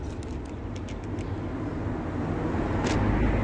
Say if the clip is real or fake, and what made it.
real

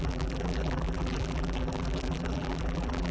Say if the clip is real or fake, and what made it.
fake, vocoder, BigVGAN v2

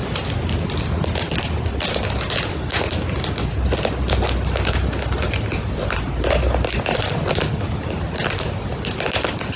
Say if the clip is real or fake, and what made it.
real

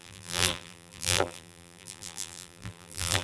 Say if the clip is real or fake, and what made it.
fake, vocoder, BigVGAN v2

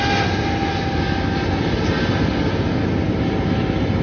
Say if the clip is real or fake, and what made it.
real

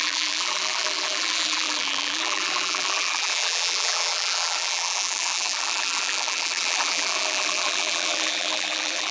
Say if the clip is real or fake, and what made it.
fake, vocoder, BigVGAN v2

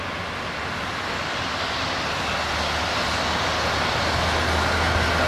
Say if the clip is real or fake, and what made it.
real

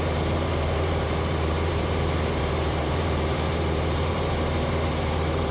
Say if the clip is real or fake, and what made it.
fake, vocoder, BigVGAN v2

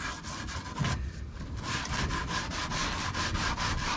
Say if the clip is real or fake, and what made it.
fake, vocoder, BigVGAN v2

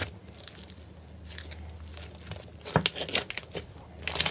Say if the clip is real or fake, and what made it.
real